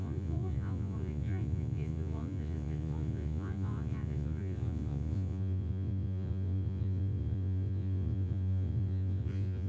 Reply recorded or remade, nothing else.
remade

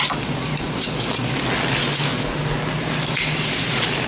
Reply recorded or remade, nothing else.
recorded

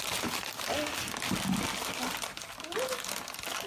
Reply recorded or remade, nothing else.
recorded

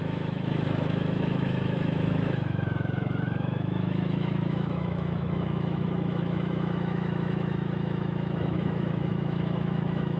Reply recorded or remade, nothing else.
remade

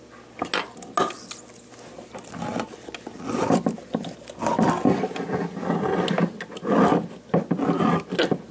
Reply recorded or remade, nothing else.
recorded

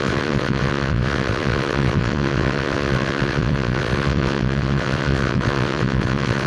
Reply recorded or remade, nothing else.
remade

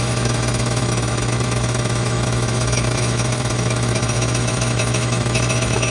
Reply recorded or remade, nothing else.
remade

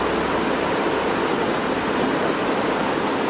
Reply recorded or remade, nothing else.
recorded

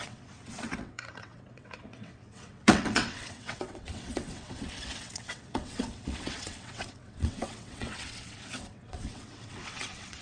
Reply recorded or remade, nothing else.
remade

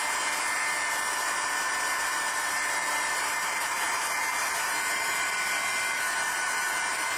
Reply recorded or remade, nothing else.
recorded